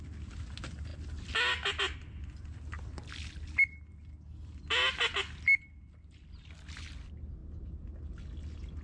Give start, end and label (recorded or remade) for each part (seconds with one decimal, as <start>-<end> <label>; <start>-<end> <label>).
0.0-8.8 recorded